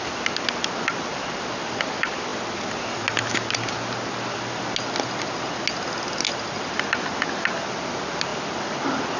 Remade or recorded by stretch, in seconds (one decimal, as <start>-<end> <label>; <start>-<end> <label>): 0.0-9.2 recorded